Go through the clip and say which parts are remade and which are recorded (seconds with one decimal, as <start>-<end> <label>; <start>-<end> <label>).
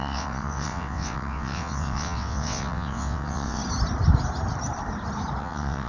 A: 0.0-3.6 remade; 3.6-5.4 recorded; 5.4-5.9 remade